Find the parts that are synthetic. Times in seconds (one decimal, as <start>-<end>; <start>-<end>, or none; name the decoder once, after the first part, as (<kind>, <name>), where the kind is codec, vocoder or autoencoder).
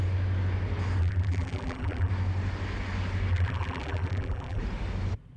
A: 1.0-2.1 (vocoder, BigVGAN v2); 3.3-4.6